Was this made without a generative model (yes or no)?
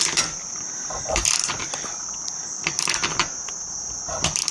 no